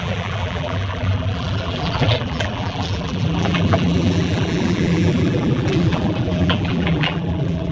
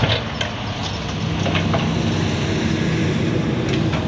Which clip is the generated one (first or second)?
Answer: first